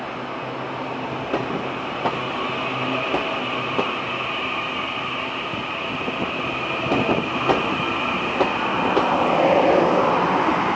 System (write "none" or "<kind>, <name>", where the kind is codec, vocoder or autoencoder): none